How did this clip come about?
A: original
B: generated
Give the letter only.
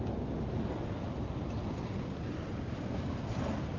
A